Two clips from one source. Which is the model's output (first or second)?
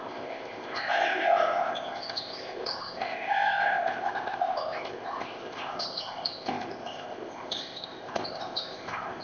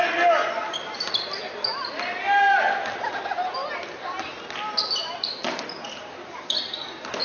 first